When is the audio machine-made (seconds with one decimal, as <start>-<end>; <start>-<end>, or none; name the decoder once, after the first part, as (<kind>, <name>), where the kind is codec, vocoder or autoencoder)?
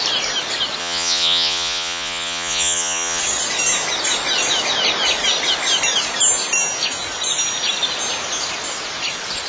0.8-3.2 (vocoder, Vocos)